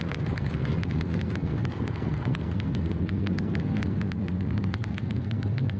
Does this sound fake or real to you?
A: fake